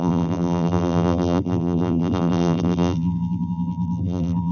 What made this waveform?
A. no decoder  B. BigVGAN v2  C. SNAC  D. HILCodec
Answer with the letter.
B